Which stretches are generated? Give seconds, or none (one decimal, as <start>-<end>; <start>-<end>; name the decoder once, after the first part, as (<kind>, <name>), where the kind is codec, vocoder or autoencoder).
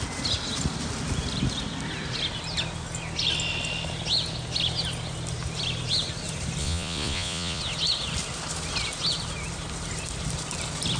6.6-7.6 (vocoder, Vocos)